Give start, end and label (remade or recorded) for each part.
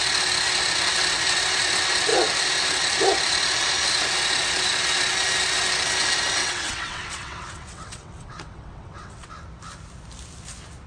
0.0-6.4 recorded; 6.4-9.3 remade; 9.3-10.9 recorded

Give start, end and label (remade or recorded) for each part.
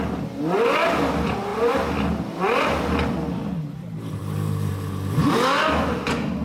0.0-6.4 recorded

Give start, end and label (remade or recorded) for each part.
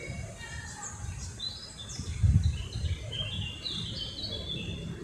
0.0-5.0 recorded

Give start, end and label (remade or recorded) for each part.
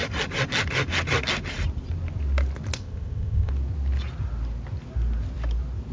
0.0-2.8 recorded; 2.8-3.5 remade; 3.5-5.9 recorded